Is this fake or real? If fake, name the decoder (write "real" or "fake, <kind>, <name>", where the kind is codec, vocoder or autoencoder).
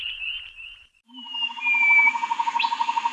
fake, vocoder, BigVGAN v2